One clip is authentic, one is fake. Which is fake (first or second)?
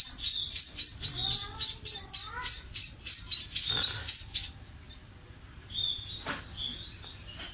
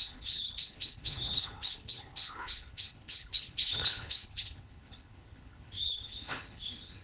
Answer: second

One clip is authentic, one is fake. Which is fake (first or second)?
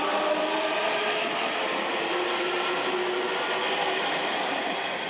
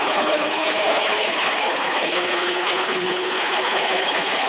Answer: second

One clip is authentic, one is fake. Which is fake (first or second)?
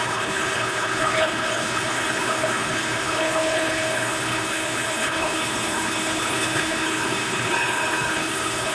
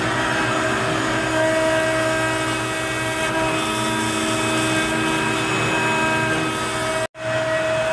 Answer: first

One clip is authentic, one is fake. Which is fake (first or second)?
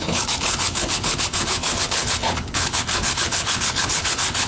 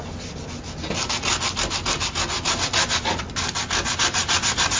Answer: first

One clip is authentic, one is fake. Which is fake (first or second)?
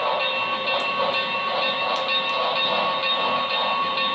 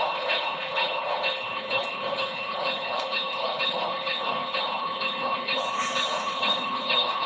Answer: second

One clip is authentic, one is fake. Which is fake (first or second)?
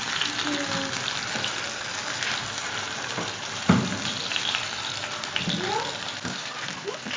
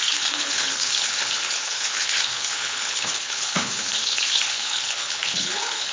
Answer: second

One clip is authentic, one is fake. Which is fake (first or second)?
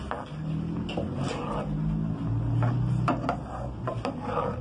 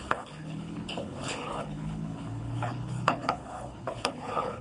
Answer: second